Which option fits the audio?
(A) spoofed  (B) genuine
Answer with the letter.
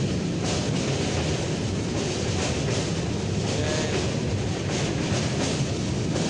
B